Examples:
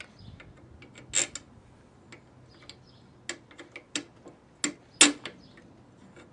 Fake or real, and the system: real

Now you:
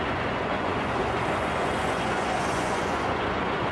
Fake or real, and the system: fake, vocoder, Vocos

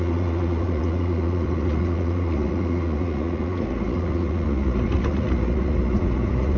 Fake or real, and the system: fake, vocoder, Vocos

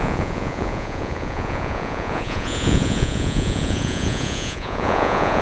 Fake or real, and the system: fake, vocoder, Vocos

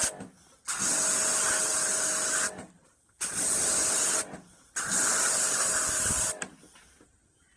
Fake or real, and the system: real